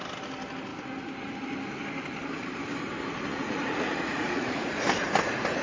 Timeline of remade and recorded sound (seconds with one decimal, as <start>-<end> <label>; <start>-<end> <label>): 0.0-3.3 recorded; 3.3-4.8 remade; 4.8-5.6 recorded